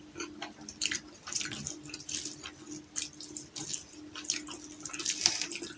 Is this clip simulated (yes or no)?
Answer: yes